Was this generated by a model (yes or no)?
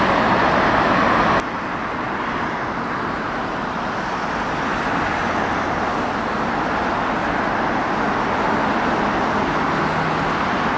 no